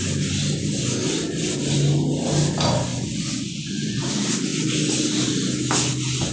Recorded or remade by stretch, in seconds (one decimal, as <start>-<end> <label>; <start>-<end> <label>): 0.0-2.9 recorded; 2.9-4.1 remade; 4.1-6.3 recorded